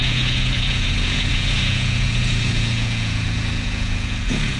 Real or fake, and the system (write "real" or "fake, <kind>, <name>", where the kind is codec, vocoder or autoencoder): fake, vocoder, Vocos